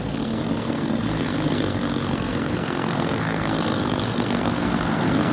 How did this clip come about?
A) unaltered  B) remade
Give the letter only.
B